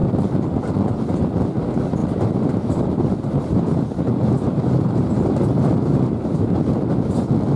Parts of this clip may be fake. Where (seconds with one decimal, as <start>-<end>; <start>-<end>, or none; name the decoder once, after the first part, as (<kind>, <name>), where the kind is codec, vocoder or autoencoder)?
0.0-0.7 (vocoder, BigVGAN v2); 2.0-6.6